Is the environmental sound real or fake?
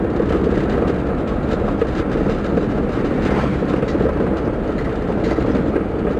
real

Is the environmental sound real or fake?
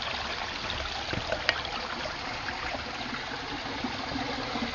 real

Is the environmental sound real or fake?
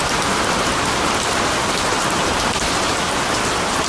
real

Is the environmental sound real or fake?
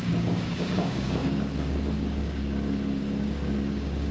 fake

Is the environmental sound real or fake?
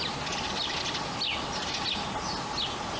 real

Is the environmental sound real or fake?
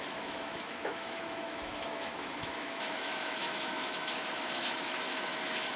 fake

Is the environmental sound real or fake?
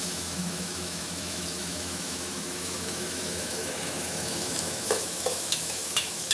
fake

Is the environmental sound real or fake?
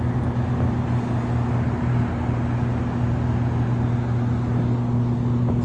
real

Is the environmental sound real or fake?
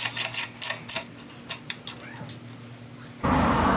real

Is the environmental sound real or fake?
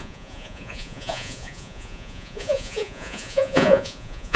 fake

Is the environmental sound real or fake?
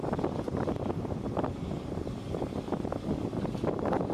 fake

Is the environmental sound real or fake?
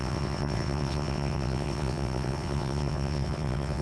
fake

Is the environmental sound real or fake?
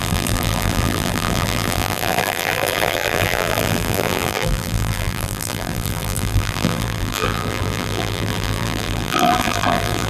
fake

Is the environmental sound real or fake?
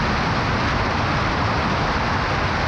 real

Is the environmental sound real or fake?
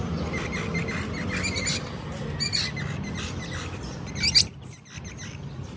real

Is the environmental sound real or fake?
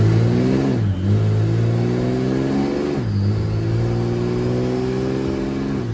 real